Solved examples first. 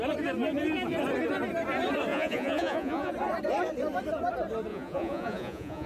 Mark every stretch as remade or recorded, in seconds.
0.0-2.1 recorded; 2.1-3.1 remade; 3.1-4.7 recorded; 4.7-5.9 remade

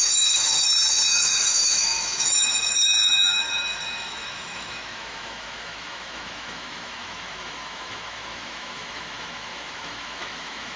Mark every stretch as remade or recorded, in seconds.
0.0-10.8 remade

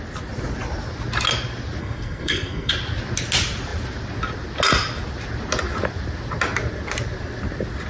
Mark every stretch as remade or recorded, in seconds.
0.0-1.8 recorded; 1.8-2.7 remade; 2.7-7.9 recorded

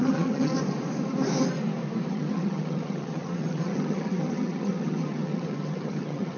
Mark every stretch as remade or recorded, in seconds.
0.0-0.5 remade; 0.5-2.1 recorded; 2.1-6.4 remade

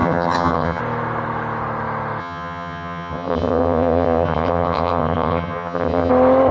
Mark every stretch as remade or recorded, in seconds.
0.0-0.8 remade; 0.8-2.2 recorded; 2.2-6.1 remade; 6.1-6.5 recorded